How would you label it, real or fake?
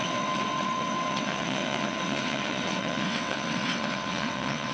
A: fake